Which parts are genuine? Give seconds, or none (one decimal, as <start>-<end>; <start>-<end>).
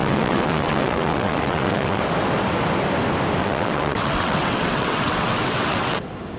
2.0-3.4; 6.0-6.4